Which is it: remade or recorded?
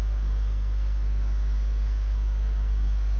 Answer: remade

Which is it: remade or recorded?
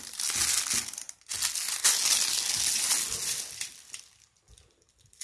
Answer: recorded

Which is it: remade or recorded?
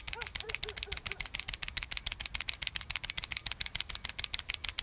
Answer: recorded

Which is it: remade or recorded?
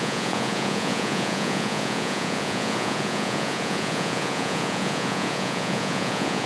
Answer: remade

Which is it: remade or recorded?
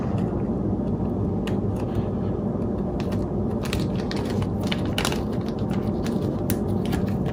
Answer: recorded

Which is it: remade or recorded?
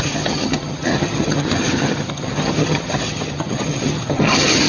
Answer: remade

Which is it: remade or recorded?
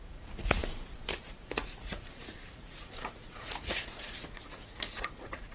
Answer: remade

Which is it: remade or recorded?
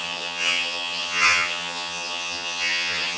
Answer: remade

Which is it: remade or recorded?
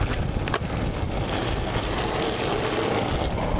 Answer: recorded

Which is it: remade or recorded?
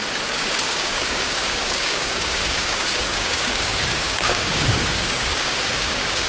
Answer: remade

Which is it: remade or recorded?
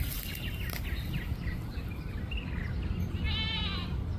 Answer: recorded